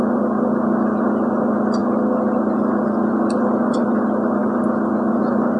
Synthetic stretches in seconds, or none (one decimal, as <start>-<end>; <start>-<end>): none